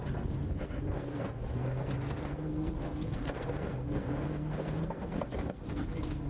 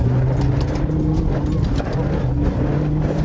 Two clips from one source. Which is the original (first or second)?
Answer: second